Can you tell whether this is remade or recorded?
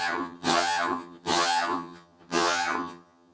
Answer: remade